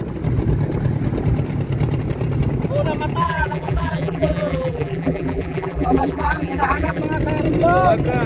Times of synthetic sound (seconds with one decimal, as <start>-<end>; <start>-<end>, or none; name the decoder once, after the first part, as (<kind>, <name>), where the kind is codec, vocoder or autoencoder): 3.2-7.0 (vocoder, BigVGAN v2)